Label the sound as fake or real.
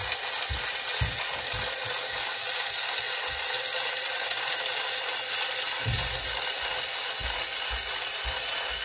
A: real